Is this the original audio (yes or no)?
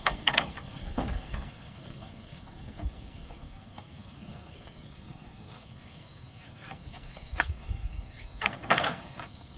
no